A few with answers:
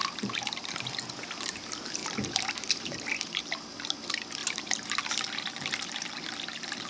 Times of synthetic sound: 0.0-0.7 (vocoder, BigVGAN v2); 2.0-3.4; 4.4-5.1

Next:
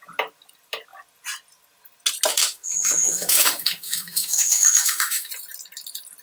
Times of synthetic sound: 2.3-5.3 (autoencoder, DAC-VAE)